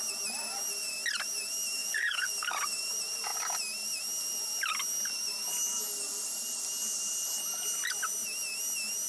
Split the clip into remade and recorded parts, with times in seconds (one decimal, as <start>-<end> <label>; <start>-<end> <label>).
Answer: 0.0-1.8 recorded; 1.8-2.3 remade; 2.3-9.1 recorded